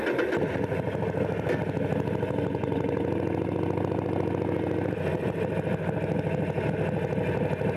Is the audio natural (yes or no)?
yes